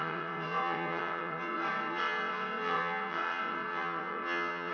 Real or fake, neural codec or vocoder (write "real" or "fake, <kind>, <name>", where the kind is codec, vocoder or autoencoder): fake, vocoder, WaveNeXt